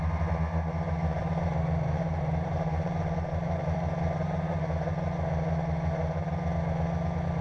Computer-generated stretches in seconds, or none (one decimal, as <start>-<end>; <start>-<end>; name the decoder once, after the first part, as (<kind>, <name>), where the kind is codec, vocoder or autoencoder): 1.2-3.9 (vocoder, BigVGAN v2)

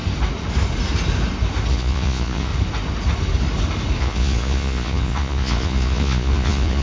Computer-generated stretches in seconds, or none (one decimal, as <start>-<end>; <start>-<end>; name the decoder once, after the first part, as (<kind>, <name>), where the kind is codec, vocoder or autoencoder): 1.7-2.5 (vocoder, Vocos); 4.0-6.8

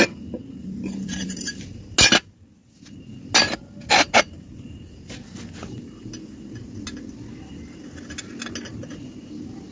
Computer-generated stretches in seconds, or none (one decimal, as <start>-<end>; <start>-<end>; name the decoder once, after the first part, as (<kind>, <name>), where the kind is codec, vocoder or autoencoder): 0.6-1.6 (vocoder, BigVGAN v2)

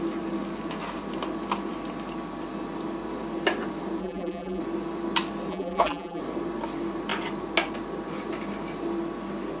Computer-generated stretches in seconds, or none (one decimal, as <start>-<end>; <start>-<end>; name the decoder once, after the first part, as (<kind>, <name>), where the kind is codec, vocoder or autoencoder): 4.0-4.6 (vocoder, BigVGAN v2); 5.5-6.2